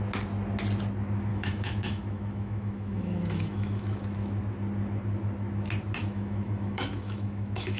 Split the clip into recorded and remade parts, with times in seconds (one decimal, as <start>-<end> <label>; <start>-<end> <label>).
0.0-1.3 recorded; 1.3-4.4 remade; 4.4-6.0 recorded; 6.0-7.8 remade

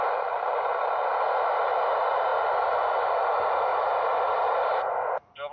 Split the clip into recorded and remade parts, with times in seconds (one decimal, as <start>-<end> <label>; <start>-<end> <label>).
0.0-3.7 recorded; 3.7-4.8 remade; 4.8-5.5 recorded

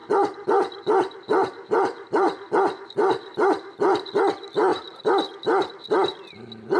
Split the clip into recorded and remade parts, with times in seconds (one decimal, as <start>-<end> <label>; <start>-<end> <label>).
0.0-4.1 remade; 4.1-6.8 recorded

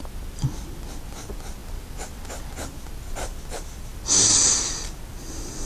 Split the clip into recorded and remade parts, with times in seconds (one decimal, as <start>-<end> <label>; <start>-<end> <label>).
0.0-5.7 recorded

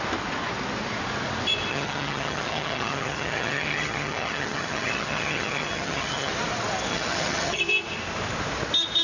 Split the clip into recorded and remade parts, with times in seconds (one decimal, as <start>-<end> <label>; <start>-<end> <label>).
0.0-1.7 recorded; 1.7-6.3 remade; 6.3-6.9 recorded; 6.9-7.6 remade; 7.6-9.0 recorded

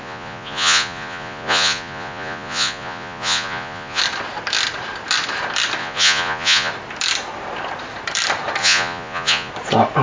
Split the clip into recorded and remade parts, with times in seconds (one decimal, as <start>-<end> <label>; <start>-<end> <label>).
0.0-4.0 remade; 4.0-5.8 recorded; 5.8-6.7 remade; 6.7-8.6 recorded; 8.6-9.5 remade; 9.5-10.0 recorded

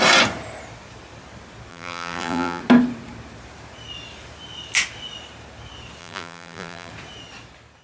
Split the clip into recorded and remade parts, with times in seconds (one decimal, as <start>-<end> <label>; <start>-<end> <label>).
0.0-1.7 recorded; 1.7-2.6 remade; 2.6-6.0 recorded; 6.0-6.9 remade; 6.9-7.8 recorded